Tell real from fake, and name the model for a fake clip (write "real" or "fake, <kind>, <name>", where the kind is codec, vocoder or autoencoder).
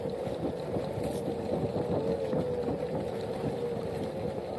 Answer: real